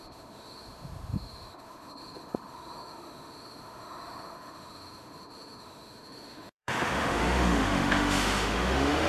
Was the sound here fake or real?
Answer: fake